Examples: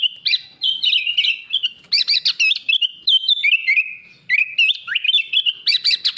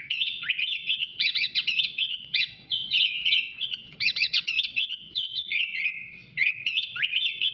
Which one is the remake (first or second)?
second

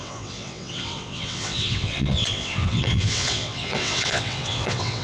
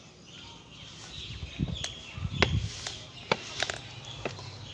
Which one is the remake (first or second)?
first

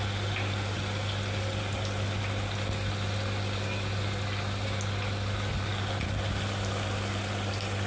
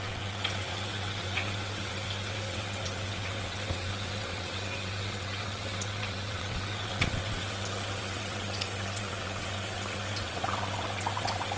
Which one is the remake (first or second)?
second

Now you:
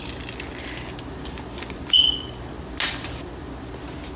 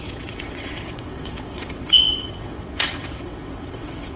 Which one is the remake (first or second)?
second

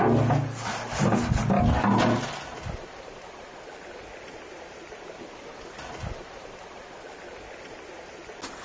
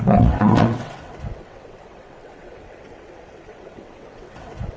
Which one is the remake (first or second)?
second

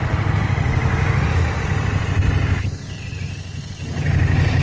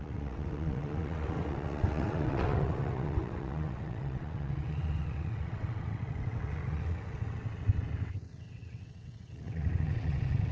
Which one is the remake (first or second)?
second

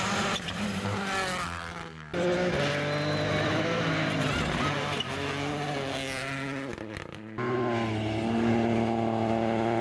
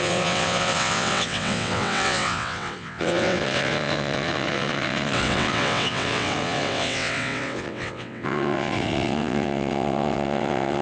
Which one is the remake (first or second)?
second